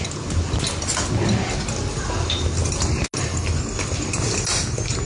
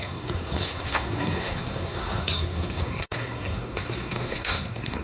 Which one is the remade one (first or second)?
second